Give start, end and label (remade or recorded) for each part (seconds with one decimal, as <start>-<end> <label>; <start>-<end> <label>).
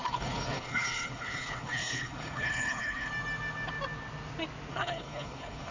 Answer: 0.0-3.1 remade; 3.1-4.7 recorded; 4.7-5.7 remade